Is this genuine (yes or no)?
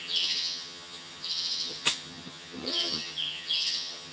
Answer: no